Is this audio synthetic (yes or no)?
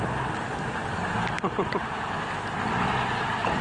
no